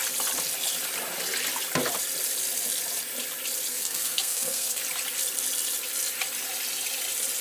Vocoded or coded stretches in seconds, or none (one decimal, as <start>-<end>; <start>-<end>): 3.7-4.8